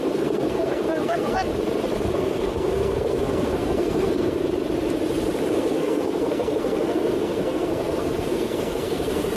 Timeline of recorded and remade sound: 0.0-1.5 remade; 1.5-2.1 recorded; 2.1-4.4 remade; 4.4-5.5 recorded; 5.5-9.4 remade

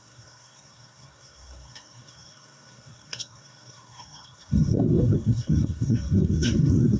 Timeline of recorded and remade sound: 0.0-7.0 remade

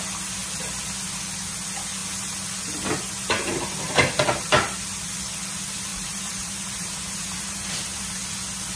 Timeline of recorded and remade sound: 0.0-5.9 recorded; 5.9-8.3 remade; 8.3-8.8 recorded

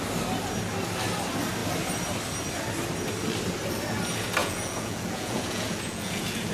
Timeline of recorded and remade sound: 0.0-4.4 recorded; 4.4-6.5 remade

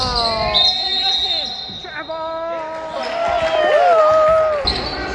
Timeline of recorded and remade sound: 0.0-5.1 recorded

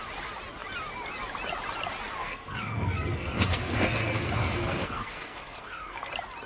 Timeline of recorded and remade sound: 0.0-2.2 recorded; 2.2-6.1 remade; 6.1-6.5 recorded

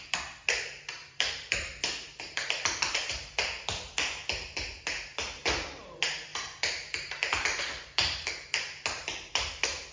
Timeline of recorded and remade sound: 0.0-1.0 recorded; 1.0-3.4 remade; 3.4-6.3 recorded; 6.3-8.3 remade; 8.3-9.9 recorded

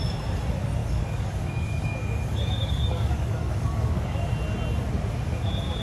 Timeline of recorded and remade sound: 0.0-0.8 recorded; 0.8-4.3 remade; 4.3-5.8 recorded